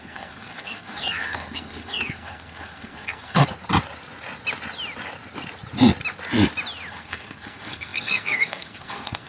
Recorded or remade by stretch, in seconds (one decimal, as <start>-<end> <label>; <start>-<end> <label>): 0.0-3.4 remade; 3.4-6.9 recorded; 6.9-9.3 remade